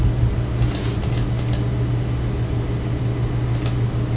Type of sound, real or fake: real